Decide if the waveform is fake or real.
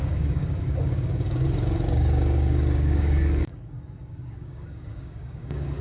fake